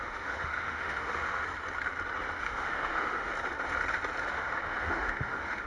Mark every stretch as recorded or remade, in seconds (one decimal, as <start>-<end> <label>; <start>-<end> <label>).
0.0-1.4 remade; 1.4-2.4 recorded; 2.4-3.3 remade; 3.3-4.3 recorded; 4.3-5.7 remade